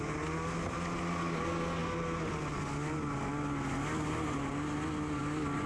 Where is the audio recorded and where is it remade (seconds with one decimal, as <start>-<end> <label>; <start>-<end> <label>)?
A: 0.0-5.7 recorded